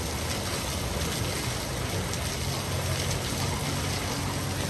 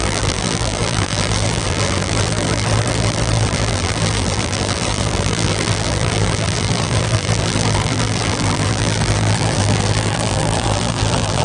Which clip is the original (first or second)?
first